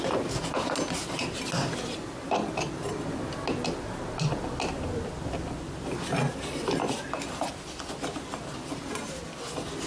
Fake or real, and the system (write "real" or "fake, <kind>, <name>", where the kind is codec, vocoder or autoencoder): real